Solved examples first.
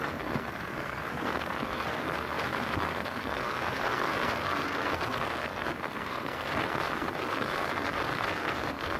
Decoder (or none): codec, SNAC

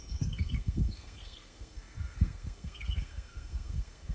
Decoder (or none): codec, SNAC